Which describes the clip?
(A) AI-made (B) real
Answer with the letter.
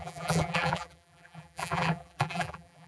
A